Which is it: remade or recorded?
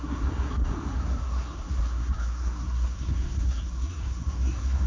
remade